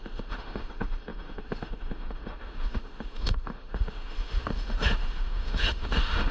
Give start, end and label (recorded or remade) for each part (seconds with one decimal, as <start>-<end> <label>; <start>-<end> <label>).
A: 0.0-6.3 remade